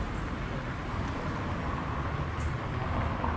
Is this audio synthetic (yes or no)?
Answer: no